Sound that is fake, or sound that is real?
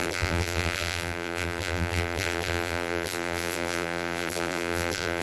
fake